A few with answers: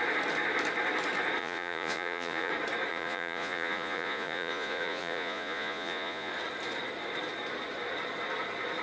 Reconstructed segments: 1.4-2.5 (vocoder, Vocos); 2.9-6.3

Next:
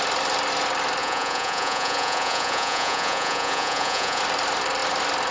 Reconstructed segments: 1.0-4.2 (vocoder, Vocos)

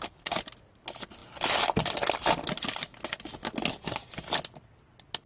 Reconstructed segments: none

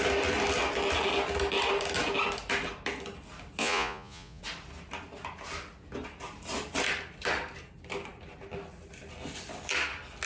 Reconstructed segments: 3.6-4.4 (vocoder, Vocos)

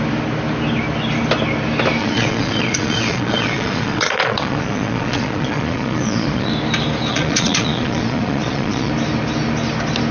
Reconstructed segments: 2.0-6.5 (vocoder, Vocos); 7.1-8.9

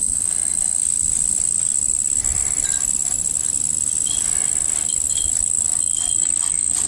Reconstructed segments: none

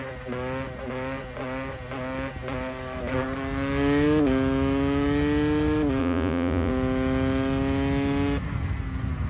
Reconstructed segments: 6.0-6.7 (vocoder, Vocos)

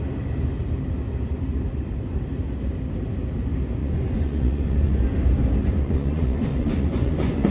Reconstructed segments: 3.8-5.0 (vocoder, Vocos); 5.6-7.5